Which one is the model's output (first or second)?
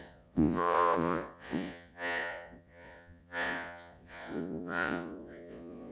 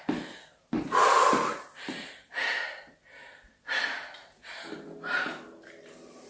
first